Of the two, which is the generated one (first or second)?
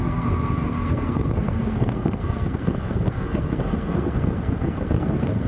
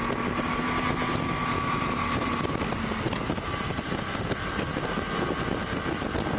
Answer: first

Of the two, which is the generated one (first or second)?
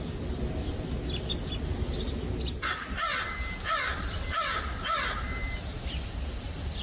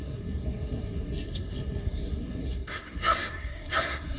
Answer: second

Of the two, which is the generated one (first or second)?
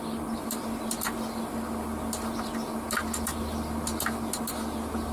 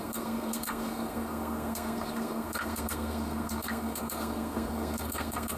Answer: second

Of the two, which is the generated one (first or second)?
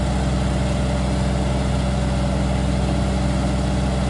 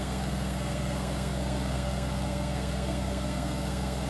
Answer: second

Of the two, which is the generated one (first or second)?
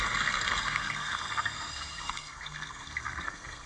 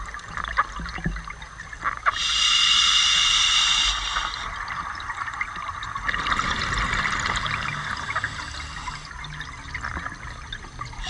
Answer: first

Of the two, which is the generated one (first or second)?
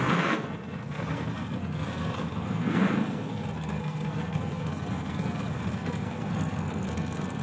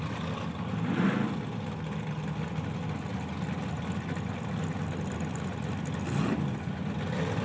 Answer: first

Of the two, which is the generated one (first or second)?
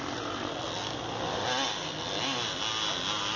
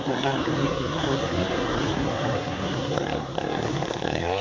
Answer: second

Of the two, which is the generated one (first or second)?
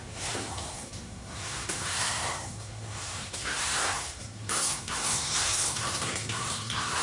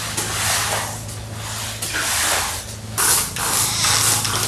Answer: first